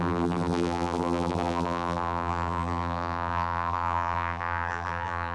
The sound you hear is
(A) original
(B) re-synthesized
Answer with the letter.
B